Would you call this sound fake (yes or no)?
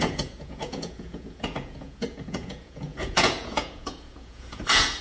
yes